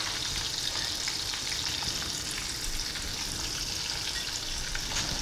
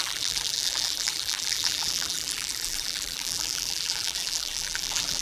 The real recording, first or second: first